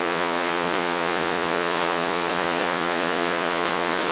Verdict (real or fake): fake